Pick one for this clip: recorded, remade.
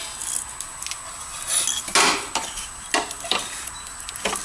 recorded